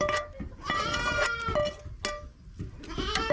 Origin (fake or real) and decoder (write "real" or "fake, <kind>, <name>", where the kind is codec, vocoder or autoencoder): real